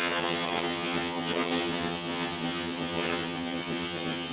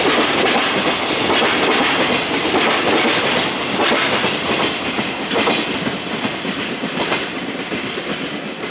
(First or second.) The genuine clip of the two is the second